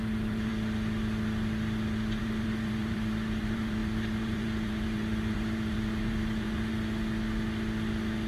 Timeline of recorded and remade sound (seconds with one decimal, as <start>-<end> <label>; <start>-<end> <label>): 0.0-0.5 remade; 0.5-2.2 recorded; 2.2-6.7 remade; 6.7-8.3 recorded